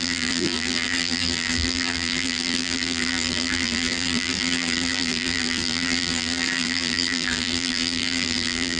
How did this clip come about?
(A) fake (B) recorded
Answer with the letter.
A